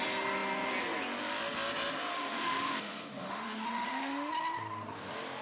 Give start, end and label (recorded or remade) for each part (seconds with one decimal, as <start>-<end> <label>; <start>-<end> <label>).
0.0-2.1 recorded; 2.1-4.3 remade; 4.3-5.4 recorded